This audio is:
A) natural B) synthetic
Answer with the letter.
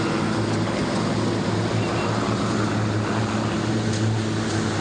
A